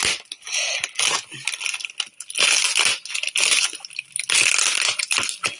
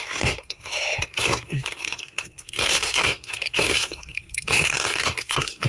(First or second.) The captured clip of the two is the first